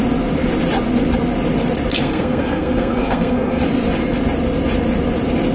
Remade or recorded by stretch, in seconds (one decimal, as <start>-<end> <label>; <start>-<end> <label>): 0.0-2.0 recorded; 2.0-3.6 remade; 3.6-5.5 recorded